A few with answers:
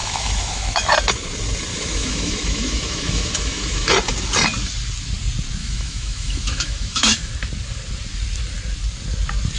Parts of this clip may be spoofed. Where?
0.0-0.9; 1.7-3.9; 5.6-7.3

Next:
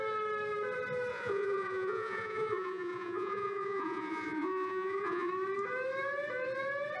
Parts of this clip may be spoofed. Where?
1.1-5.3

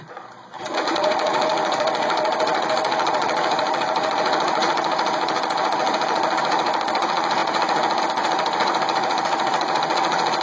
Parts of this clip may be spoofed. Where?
0.0-10.4

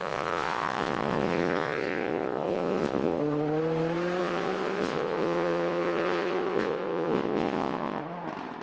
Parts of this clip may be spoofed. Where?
0.0-3.2; 4.2-8.0

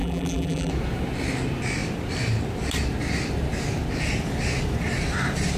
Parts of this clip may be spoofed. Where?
0.0-0.7

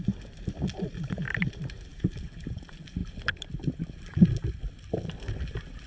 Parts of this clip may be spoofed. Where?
none